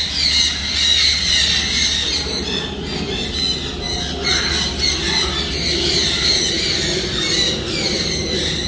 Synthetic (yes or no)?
no